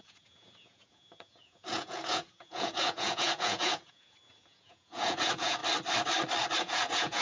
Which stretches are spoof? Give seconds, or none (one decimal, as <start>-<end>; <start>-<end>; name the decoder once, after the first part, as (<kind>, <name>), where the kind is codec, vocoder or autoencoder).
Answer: 0.0-5.6 (vocoder, Vocos); 6.6-7.2